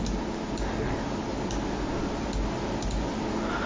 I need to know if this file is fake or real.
real